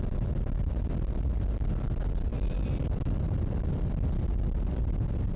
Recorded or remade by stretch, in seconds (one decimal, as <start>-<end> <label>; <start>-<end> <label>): 0.0-5.4 recorded